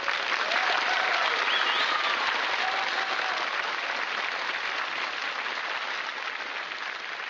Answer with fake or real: real